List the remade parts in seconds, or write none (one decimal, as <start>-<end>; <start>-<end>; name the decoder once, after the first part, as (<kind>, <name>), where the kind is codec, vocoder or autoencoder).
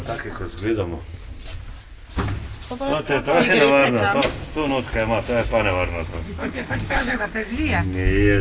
6.1-7.5 (codec, HILCodec)